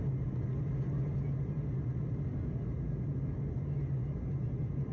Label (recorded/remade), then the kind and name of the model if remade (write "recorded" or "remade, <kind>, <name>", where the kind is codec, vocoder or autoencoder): recorded